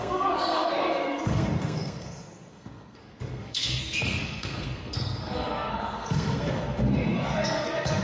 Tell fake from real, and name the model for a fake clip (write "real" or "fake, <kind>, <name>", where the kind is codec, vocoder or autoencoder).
fake, codec, SNAC